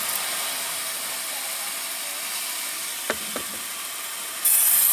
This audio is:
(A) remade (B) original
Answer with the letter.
B